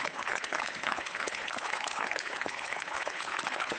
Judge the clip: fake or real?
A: fake